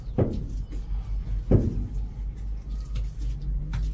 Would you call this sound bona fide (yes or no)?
yes